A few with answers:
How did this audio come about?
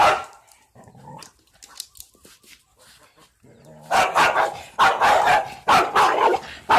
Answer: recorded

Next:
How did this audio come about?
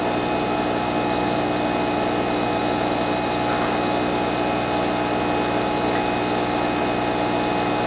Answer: recorded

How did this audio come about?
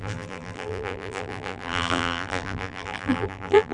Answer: remade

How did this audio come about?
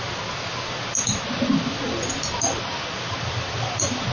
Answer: recorded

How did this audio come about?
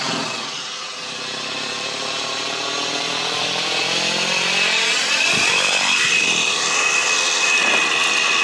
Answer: remade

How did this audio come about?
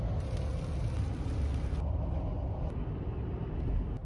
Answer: recorded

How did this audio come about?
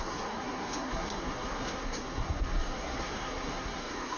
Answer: remade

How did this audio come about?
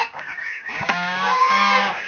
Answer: remade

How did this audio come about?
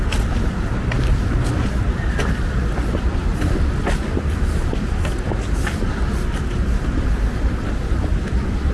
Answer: remade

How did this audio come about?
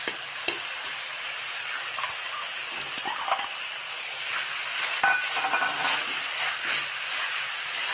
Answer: recorded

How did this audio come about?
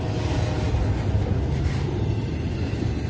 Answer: recorded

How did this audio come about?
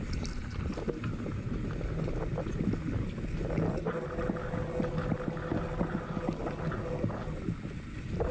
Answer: recorded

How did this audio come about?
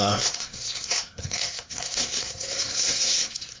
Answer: remade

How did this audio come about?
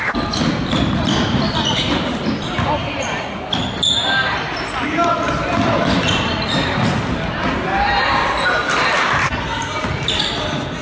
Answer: recorded